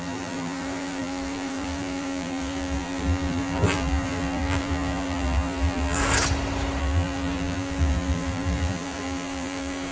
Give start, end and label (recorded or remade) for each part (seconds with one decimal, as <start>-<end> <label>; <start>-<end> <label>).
0.0-6.0 remade; 6.0-6.8 recorded; 6.8-9.9 remade